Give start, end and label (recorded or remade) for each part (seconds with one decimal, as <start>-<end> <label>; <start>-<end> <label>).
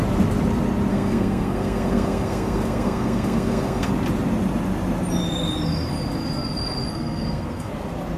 0.0-0.9 recorded; 0.9-3.9 remade; 3.9-6.9 recorded; 6.9-7.7 remade; 7.7-8.2 recorded